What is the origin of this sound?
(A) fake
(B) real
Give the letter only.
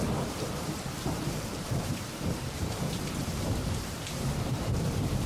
A